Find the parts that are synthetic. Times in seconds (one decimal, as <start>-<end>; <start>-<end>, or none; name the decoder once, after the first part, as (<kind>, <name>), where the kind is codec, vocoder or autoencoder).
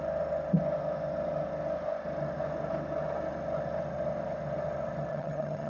5.1-5.7 (vocoder, HiFi-GAN)